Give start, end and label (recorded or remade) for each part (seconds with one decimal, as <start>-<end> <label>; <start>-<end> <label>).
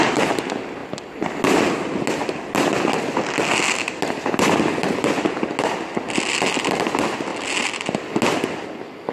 0.0-9.1 recorded